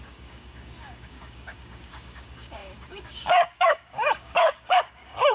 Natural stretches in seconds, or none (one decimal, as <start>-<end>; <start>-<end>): none